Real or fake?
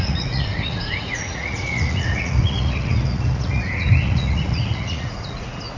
fake